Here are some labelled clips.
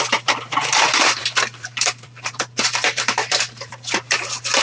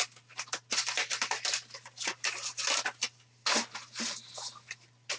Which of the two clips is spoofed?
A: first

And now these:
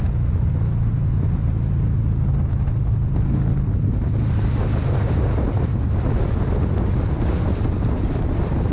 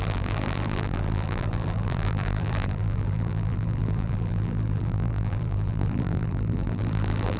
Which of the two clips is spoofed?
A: second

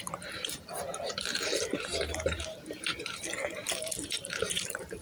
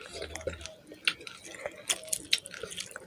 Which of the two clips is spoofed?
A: first